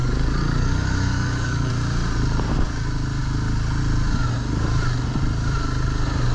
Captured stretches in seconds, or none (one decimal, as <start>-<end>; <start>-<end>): 1.7-6.3